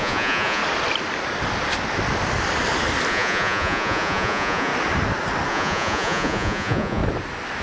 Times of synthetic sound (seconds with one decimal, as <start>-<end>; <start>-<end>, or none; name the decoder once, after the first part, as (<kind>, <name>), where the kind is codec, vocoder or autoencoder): 0.0-0.6 (vocoder, Vocos); 3.1-4.7; 5.5-7.0